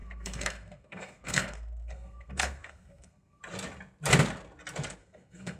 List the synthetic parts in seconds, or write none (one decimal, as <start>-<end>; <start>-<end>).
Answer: 0.0-3.4; 5.0-5.6